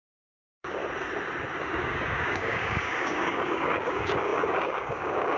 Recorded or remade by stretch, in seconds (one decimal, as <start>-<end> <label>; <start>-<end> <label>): 0.0-0.8 remade; 0.8-1.6 recorded; 1.6-5.4 remade